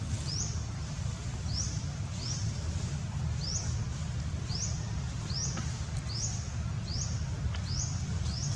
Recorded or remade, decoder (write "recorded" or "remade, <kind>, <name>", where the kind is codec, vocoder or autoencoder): recorded